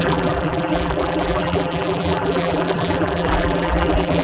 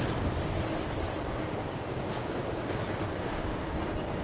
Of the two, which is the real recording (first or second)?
second